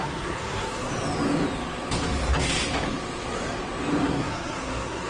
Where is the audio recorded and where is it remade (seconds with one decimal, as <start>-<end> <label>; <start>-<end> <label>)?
0.0-0.9 remade; 0.9-4.0 recorded; 4.0-5.1 remade